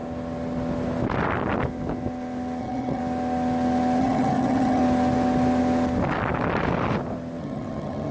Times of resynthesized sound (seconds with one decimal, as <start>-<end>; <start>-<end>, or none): 2.6-3.0; 4.0-4.8; 7.4-8.1